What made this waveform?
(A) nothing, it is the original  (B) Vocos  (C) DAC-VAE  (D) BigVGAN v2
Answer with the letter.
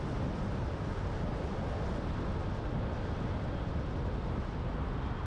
A